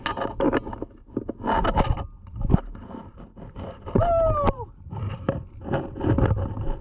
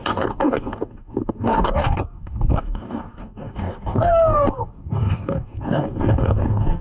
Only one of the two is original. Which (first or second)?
first